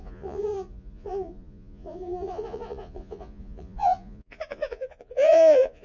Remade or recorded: remade